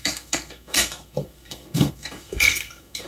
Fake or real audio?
fake